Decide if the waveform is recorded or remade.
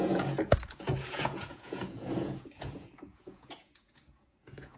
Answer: remade